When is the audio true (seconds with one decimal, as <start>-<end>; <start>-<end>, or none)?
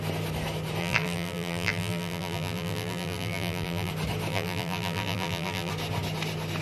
0.0-0.8; 3.9-4.3; 5.7-6.6